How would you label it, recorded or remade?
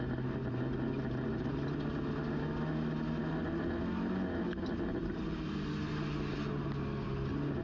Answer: recorded